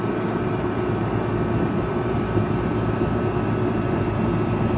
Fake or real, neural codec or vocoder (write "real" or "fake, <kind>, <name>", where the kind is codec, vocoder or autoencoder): fake, vocoder, BigVGAN v2